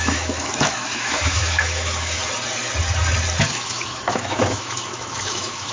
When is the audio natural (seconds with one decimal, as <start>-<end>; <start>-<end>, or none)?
2.2-3.4